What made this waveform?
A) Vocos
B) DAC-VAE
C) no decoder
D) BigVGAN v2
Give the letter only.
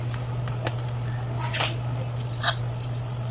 D